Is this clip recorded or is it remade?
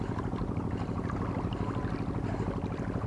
recorded